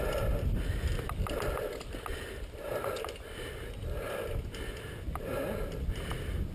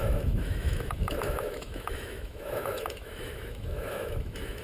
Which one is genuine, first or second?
first